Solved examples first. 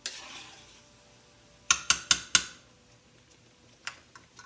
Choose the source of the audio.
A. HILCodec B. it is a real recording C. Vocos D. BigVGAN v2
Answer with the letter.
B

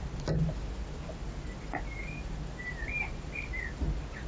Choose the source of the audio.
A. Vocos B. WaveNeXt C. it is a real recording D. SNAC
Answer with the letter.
C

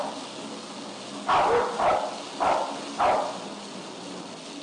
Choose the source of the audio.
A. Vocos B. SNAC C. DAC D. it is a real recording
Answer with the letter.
D